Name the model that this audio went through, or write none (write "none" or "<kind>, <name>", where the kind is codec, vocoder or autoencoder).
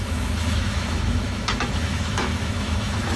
autoencoder, DAC-VAE